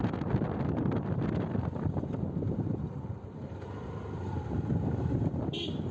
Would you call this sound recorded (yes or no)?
no